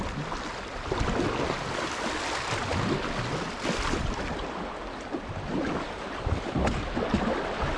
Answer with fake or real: real